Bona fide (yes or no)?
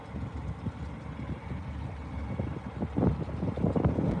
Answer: yes